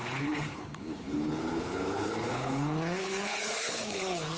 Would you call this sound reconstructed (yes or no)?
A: yes